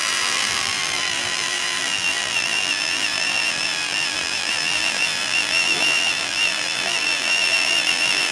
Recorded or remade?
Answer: remade